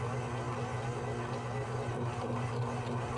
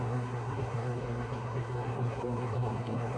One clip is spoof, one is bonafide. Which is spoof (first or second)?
second